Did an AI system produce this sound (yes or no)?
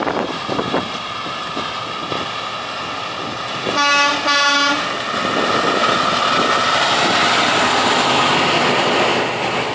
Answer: no